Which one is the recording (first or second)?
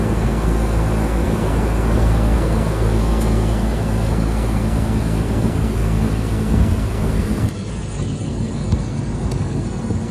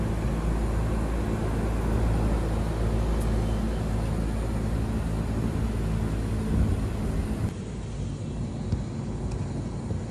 second